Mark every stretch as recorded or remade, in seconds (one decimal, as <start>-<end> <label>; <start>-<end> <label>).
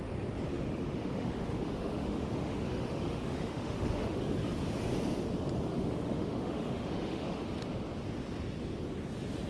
0.0-0.5 recorded; 0.5-4.2 remade; 4.2-5.7 recorded; 5.7-7.4 remade; 7.4-9.5 recorded